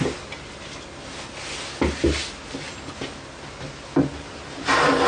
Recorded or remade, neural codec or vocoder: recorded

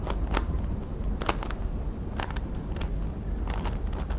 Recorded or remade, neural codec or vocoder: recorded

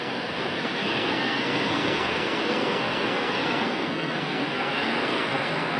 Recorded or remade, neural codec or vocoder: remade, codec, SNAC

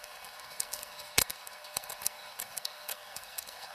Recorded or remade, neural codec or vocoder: remade, codec, SNAC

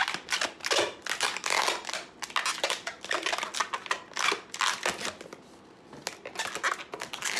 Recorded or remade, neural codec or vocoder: recorded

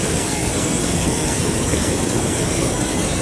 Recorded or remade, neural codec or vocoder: remade, codec, SNAC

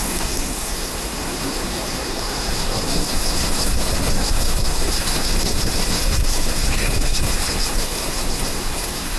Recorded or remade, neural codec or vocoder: remade, codec, SNAC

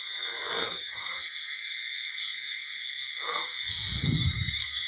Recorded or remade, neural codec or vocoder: remade, codec, SNAC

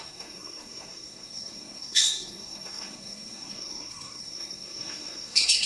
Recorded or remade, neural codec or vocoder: remade, codec, SNAC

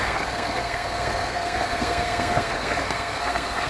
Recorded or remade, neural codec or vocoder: remade, codec, SNAC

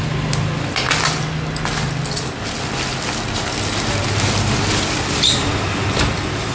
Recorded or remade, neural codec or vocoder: recorded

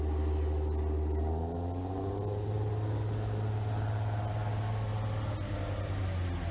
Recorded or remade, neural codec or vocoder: recorded